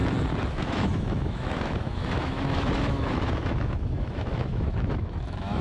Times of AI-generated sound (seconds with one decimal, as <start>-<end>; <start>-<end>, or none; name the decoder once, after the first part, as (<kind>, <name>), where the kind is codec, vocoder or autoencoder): 0.5-5.6 (autoencoder, DAC-VAE)